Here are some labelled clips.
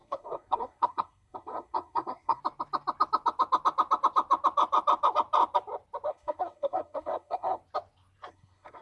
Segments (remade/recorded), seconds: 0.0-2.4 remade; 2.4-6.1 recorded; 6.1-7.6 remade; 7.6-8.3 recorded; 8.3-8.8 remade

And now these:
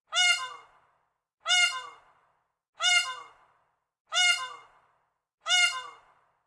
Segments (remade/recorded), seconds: 0.0-6.5 recorded

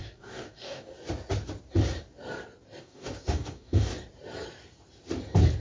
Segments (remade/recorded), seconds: 0.0-0.9 remade; 0.9-2.8 recorded; 2.8-3.9 remade; 3.9-5.6 recorded

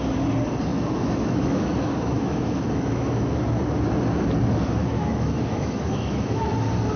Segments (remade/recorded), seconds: 0.0-0.7 recorded; 0.7-3.4 remade; 3.4-4.8 recorded; 4.8-6.5 remade; 6.5-7.0 recorded

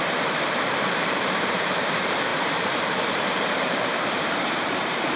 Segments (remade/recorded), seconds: 0.0-5.2 remade

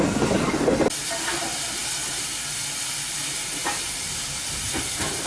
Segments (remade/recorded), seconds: 0.0-5.3 recorded